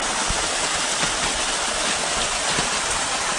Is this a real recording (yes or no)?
yes